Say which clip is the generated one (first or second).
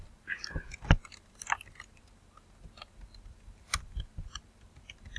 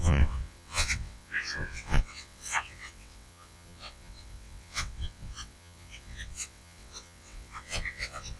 second